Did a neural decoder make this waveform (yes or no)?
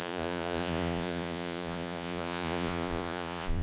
yes